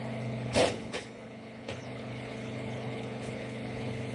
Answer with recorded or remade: remade